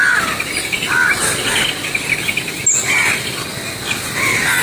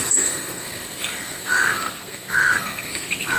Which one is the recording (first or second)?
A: first